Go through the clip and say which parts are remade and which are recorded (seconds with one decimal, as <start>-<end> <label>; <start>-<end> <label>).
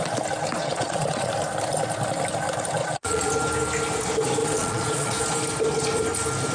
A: 0.0-0.6 recorded; 0.6-1.3 remade; 1.3-2.8 recorded; 2.8-3.3 remade; 3.3-4.4 recorded; 4.4-5.2 remade; 5.2-6.5 recorded